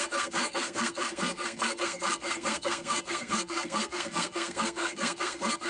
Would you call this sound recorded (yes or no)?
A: no